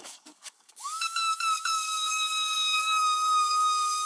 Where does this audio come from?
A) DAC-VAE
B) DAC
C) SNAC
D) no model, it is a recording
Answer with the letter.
B